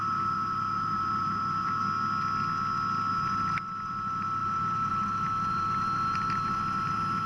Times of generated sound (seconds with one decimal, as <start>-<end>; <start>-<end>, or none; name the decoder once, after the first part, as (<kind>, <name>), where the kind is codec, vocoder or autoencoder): 0.0-1.8 (vocoder, BigVGAN v2); 3.1-7.3